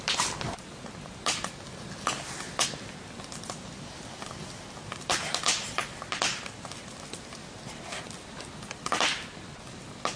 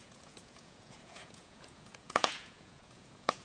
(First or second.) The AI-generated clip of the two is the second